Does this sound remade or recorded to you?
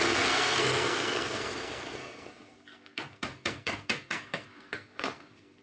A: remade